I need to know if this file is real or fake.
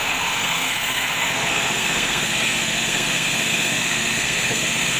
fake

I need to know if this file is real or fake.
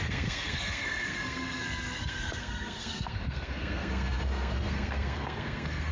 fake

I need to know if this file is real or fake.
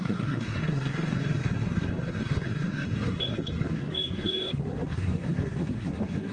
fake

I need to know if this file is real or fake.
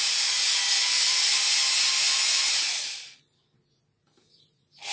real